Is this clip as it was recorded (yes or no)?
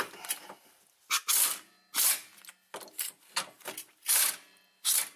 yes